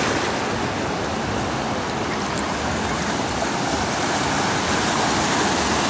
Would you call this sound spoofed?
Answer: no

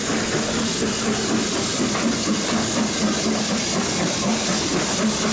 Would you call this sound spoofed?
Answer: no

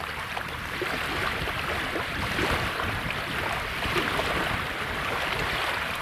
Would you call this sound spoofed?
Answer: yes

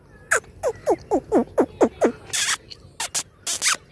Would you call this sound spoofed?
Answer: no